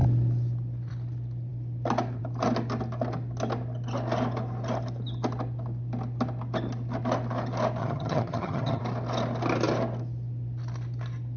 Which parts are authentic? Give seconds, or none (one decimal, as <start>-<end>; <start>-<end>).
0.0-7.8; 8.8-11.4